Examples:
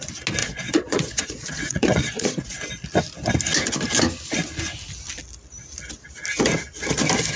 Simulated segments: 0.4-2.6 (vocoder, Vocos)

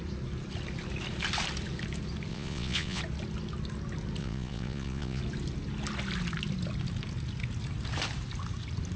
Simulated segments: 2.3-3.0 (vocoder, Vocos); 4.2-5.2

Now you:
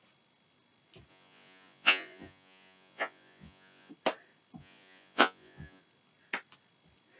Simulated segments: 1.1-3.9 (vocoder, Vocos); 4.6-5.8